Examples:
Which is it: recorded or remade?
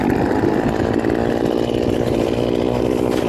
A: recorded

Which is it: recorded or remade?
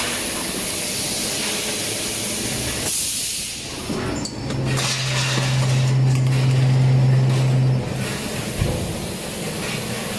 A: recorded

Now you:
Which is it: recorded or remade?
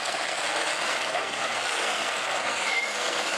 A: remade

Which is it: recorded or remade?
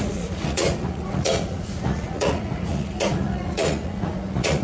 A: remade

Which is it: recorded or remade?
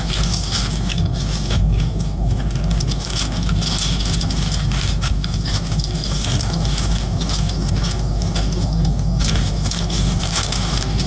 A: remade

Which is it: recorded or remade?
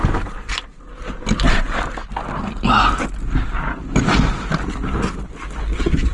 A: recorded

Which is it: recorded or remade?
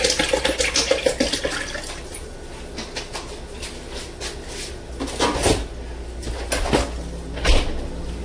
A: recorded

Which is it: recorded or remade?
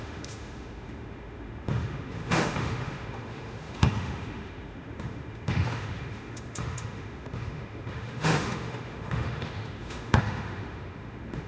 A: remade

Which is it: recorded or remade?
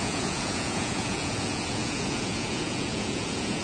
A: remade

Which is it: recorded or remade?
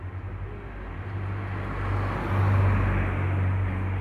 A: recorded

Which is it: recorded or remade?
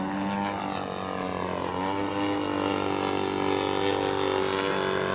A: recorded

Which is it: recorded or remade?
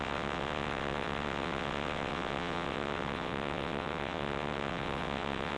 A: remade